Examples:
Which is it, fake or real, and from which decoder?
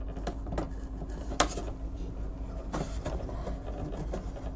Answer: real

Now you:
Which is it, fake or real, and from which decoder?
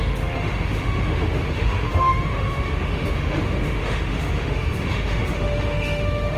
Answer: fake, autoencoder, DAC-VAE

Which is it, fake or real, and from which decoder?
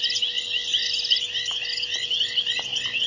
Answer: real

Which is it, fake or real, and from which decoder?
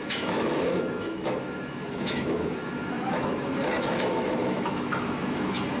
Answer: fake, autoencoder, DAC-VAE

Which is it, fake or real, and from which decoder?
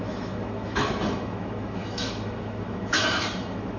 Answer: fake, autoencoder, DAC-VAE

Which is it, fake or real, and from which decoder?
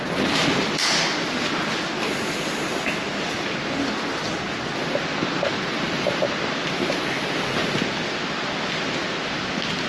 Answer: real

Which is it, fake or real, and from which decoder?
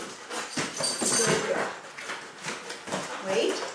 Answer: real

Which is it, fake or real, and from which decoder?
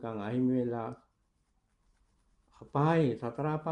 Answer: real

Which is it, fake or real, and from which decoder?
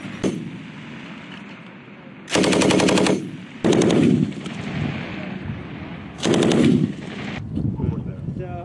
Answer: real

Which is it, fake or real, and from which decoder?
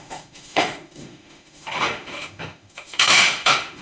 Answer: fake, autoencoder, DAC-VAE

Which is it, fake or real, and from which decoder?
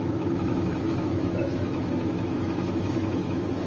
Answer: fake, autoencoder, DAC-VAE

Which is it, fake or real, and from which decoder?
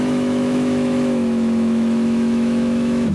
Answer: fake, autoencoder, DAC-VAE